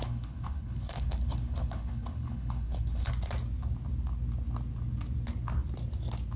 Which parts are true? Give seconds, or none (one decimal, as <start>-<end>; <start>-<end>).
3.1-6.4